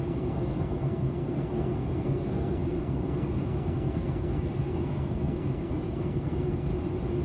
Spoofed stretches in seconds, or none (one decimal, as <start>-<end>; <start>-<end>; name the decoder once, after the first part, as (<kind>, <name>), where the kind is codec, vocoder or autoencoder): 0.0-6.7 (codec, SNAC)